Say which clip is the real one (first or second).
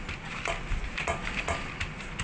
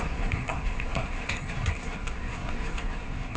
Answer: first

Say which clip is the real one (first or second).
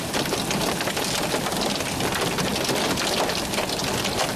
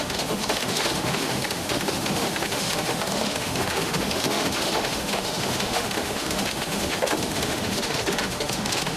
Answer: first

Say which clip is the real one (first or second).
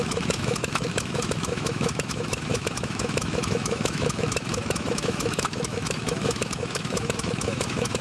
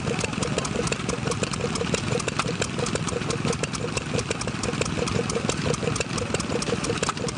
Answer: second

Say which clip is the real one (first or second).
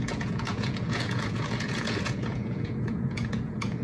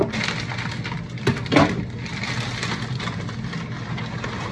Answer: second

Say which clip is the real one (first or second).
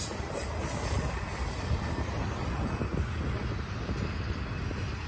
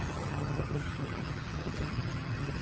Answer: first